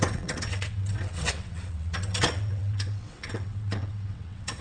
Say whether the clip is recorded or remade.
remade